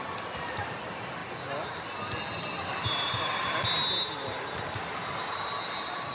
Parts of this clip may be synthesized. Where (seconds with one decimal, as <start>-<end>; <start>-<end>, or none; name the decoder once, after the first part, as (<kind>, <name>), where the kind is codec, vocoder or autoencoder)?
none